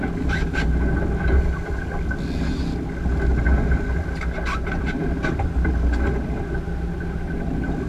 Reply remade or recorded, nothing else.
recorded